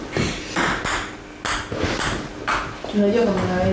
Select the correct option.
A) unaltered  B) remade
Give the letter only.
A